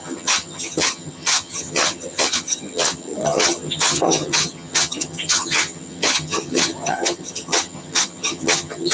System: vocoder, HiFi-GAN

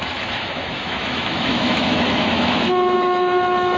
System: autoencoder, DAC-VAE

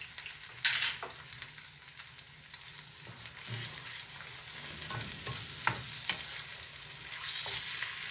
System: none